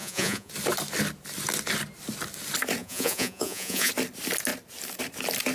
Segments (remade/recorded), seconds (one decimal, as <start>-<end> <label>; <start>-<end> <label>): 0.0-0.5 remade; 0.5-2.8 recorded; 2.8-3.9 remade; 3.9-5.5 recorded